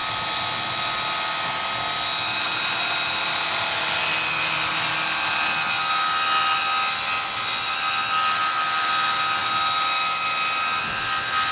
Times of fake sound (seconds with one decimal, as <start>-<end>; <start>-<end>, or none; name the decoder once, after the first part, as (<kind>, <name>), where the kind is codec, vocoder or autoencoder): none